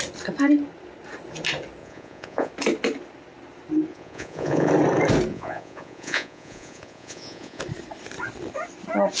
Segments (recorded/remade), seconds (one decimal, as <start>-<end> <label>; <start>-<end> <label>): 0.0-1.8 recorded; 1.8-2.5 remade; 2.5-3.9 recorded; 3.9-4.7 remade; 4.7-5.3 recorded; 5.3-7.6 remade; 7.6-9.2 recorded